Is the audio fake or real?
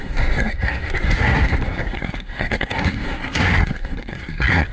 fake